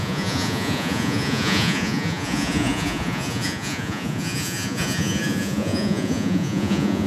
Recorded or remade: remade